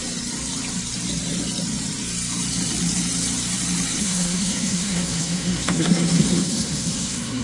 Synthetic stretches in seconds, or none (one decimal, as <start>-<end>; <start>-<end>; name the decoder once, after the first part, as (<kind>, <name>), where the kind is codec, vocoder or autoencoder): 4.0-7.4 (codec, SNAC)